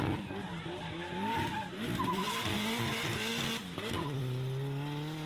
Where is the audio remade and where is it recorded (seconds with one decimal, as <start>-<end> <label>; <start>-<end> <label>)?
0.0-5.3 recorded